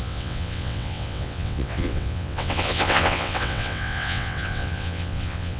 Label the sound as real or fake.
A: fake